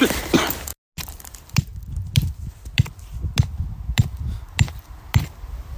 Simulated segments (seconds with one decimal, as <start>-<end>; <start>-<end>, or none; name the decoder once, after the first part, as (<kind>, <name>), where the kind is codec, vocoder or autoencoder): none